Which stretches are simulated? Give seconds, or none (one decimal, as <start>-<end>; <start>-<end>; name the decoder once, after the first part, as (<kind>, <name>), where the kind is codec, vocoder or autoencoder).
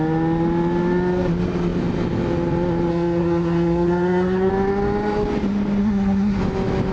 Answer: 2.9-4.5 (codec, SNAC); 5.8-6.4